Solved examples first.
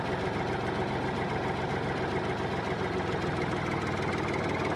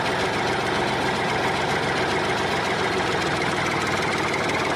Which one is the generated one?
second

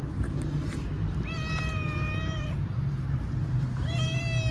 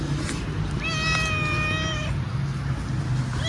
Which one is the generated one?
first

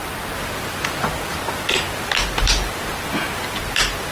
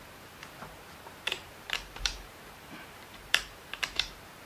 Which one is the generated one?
second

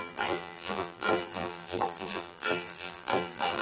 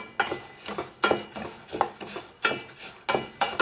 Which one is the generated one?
first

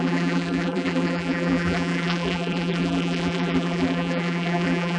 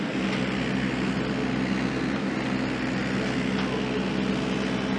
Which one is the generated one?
first